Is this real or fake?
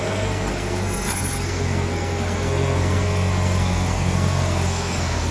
fake